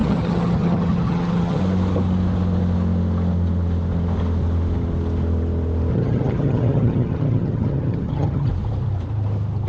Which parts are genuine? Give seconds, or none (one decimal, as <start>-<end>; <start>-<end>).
1.6-5.9; 8.5-9.7